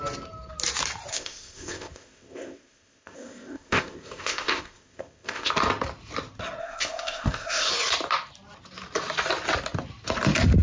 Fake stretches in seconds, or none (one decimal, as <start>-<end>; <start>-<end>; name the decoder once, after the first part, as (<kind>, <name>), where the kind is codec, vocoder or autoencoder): 1.1-5.5 (codec, ZipCodec); 6.6-7.7